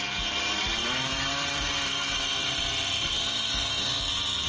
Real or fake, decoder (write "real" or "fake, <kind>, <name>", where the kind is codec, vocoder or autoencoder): fake, vocoder, BigVGAN v2